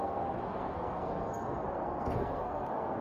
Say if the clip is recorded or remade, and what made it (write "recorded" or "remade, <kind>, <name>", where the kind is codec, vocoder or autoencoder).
remade, codec, SNAC